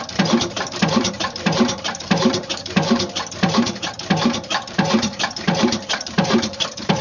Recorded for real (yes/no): no